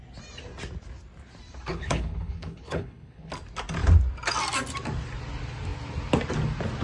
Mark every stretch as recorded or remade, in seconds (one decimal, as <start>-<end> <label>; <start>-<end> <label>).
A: 0.0-1.7 recorded; 1.7-3.3 remade; 3.3-6.8 recorded